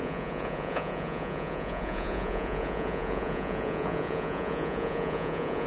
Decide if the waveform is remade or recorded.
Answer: remade